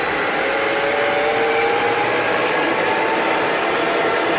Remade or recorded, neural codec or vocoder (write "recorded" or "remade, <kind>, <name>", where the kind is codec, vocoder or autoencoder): recorded